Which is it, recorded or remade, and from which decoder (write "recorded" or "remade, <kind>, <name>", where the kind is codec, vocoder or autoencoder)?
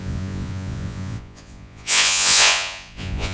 remade, vocoder, Vocos